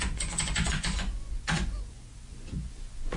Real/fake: fake